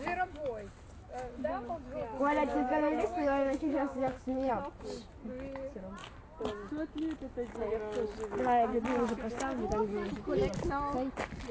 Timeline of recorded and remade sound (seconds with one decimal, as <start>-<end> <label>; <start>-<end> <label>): 0.0-2.5 recorded; 2.5-4.5 remade; 4.5-11.5 recorded

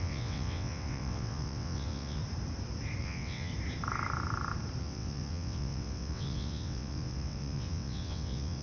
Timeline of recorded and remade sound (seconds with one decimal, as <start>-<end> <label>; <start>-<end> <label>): 0.0-2.2 remade; 2.2-3.0 recorded; 3.0-3.5 remade; 3.5-4.8 recorded; 4.8-8.6 remade

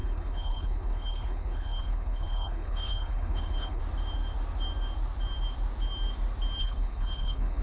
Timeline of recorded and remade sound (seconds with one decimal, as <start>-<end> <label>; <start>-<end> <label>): 0.0-3.8 remade; 3.8-6.6 recorded; 6.6-7.6 remade

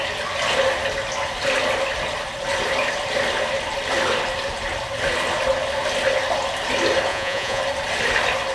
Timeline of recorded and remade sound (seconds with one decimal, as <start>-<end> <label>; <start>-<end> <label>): 0.0-7.1 recorded; 7.1-7.6 remade; 7.6-8.5 recorded

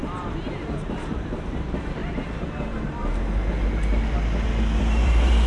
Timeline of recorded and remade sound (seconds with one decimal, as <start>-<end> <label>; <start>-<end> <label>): 0.0-3.0 remade; 3.0-4.8 recorded; 4.8-5.5 remade

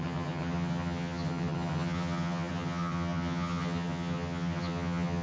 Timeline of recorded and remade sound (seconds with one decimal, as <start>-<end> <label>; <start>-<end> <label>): 0.0-5.2 remade

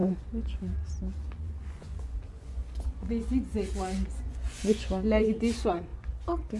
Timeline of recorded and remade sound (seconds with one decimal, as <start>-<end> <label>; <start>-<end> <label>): 0.0-6.6 remade

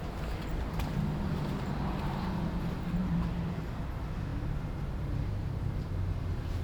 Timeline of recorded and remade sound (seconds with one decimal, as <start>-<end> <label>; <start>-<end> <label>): 0.0-0.5 recorded; 0.5-1.0 remade; 1.0-3.0 recorded; 3.0-3.8 remade; 3.8-6.6 recorded